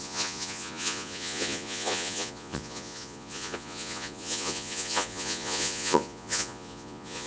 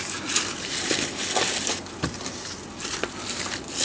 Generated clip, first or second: first